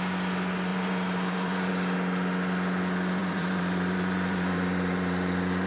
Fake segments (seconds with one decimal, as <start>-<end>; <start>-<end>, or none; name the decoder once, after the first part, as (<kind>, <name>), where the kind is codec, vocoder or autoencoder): 0.7-1.7 (vocoder, BigVGAN v2); 3.2-5.7